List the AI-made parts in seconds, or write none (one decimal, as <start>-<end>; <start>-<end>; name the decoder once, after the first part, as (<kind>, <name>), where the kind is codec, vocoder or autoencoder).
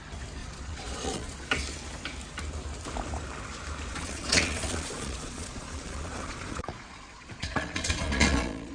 0.4-1.5 (vocoder, Vocos); 3.9-8.7